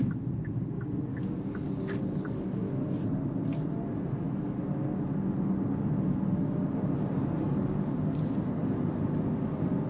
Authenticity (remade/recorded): recorded